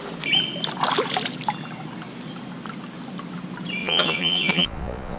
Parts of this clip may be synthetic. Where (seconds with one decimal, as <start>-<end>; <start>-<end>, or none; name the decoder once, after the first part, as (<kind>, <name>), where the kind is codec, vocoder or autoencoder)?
3.8-5.2 (vocoder, Vocos)